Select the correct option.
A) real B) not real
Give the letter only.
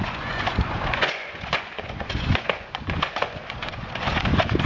B